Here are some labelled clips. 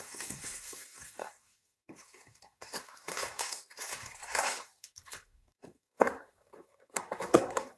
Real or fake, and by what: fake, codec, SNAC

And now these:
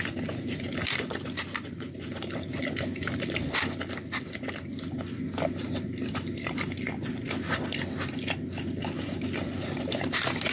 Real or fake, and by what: real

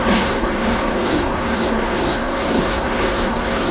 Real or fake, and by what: fake, codec, SNAC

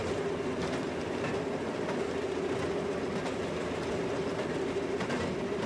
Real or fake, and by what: real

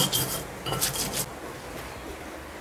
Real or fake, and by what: real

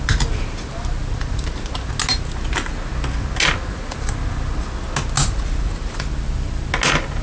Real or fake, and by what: real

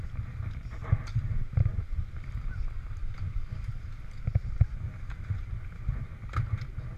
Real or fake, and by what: real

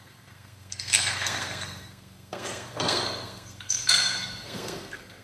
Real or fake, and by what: fake, codec, SNAC